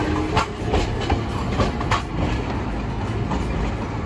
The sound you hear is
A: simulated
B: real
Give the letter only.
B